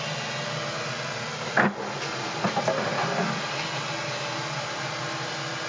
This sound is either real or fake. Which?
real